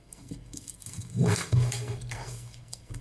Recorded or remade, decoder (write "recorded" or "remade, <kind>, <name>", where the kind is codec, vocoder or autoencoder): remade, codec, SNAC